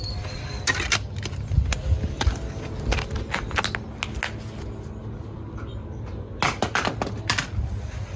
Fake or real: real